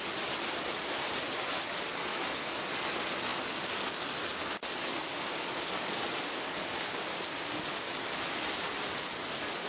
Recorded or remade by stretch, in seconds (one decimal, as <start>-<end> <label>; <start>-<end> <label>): 0.0-2.1 recorded; 2.1-2.6 remade; 2.6-9.7 recorded